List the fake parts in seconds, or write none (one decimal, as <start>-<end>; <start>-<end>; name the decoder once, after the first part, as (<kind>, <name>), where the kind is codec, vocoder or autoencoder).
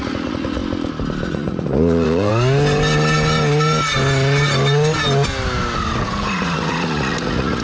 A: 0.0-0.6 (vocoder, Vocos); 1.3-2.3; 6.0-7.6